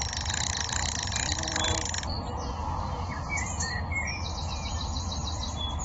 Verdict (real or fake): real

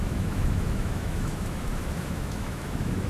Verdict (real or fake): fake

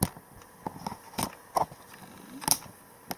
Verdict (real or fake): real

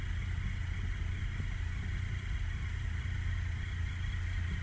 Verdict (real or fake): real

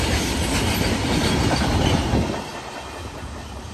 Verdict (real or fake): real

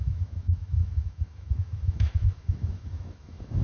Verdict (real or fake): fake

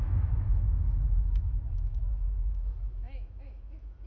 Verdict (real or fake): fake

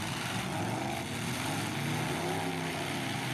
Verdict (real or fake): real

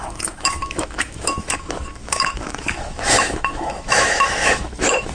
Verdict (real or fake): fake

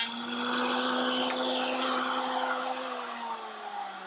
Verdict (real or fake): real